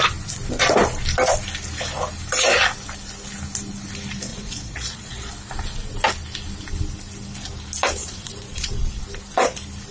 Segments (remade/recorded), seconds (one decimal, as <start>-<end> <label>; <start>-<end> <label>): 0.0-4.3 recorded; 4.3-5.3 remade; 5.3-8.0 recorded; 8.0-9.0 remade; 9.0-9.9 recorded